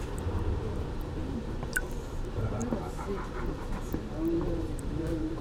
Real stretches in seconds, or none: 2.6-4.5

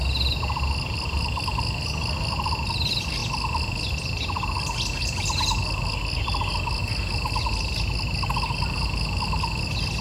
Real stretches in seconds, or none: 0.0-10.0

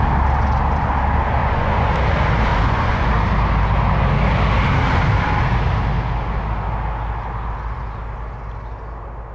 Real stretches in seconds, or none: 0.0-1.4; 1.9-2.5; 3.1-9.3

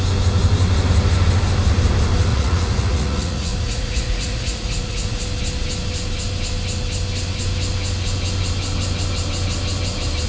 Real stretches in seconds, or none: 0.0-2.3; 5.2-10.3

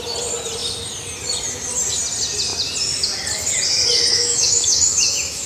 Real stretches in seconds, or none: 0.0-4.1

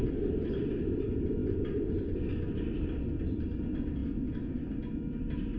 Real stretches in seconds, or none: 0.0-5.6